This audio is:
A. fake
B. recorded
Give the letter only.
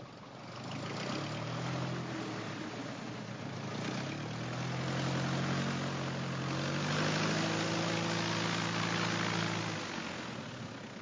B